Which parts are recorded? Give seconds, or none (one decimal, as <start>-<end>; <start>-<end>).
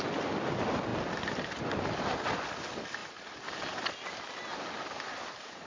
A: 0.0-0.9; 1.6-3.0; 4.2-5.7